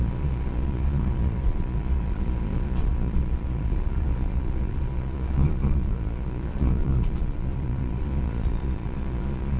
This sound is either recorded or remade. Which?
remade